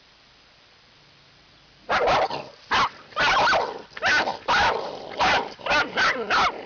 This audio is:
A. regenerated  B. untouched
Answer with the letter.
B